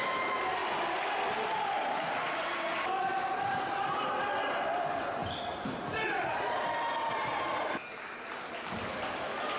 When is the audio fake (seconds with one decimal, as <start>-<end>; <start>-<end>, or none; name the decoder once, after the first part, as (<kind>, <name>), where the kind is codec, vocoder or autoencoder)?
5.2-6.7 (vocoder, BigVGAN v2)